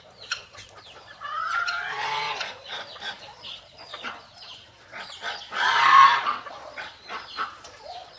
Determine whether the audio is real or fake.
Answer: fake